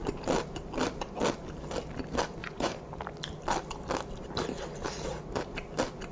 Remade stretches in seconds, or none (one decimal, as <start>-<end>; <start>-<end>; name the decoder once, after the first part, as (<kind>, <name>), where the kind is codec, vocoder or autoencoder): 2.4-3.0 (vocoder, Vocos)